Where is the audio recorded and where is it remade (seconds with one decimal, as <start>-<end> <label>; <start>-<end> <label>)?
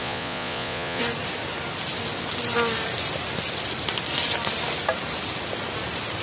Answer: 0.0-1.0 remade; 1.0-6.2 recorded